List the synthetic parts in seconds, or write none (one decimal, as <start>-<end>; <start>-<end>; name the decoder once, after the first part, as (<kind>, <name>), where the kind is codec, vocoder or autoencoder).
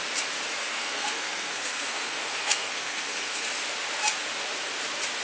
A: 0.6-3.5 (codec, SNAC)